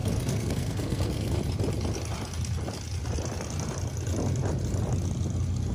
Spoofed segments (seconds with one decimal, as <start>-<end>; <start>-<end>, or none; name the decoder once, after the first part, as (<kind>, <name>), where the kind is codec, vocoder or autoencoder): 0.0-1.4 (codec, SNAC)